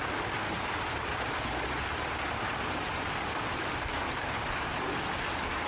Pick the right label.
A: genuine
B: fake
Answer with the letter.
A